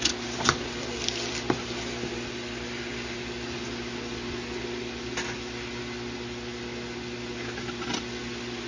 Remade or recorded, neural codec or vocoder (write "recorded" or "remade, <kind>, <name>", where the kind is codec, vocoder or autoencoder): recorded